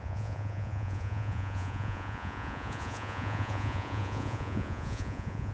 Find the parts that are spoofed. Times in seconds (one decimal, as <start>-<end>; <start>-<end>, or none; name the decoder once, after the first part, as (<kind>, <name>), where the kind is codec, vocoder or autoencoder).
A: 0.0-5.5 (vocoder, Vocos)